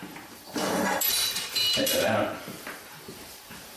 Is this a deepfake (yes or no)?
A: yes